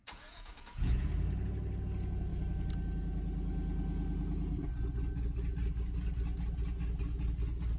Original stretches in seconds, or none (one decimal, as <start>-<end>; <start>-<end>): 1.1-7.8